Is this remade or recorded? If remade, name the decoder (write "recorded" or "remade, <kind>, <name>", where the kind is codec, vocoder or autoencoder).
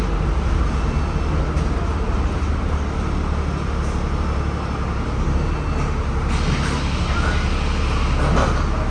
recorded